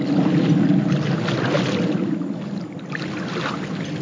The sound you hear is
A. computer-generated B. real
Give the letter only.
B